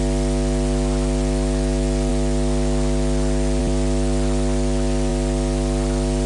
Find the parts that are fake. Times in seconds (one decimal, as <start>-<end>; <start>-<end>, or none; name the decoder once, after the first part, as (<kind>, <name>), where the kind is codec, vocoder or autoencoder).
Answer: none